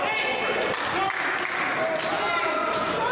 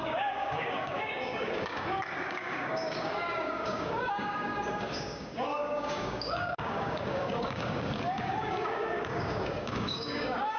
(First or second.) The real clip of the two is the first